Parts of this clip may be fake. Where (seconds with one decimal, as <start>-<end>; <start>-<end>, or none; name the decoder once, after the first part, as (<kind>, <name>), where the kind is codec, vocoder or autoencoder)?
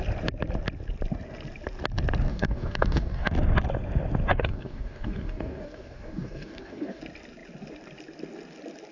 2.3-3.3 (codec, DAC); 4.3-7.0